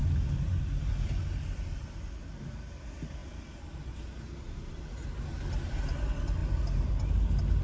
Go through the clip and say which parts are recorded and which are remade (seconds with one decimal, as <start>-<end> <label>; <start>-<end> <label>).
0.0-7.6 recorded